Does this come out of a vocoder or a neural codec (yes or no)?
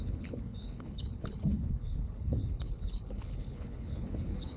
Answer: yes